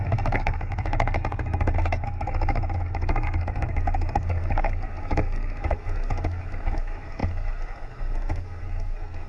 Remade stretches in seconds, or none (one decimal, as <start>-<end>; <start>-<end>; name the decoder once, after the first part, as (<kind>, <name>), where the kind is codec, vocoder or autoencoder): 0.0-9.3 (codec, SNAC)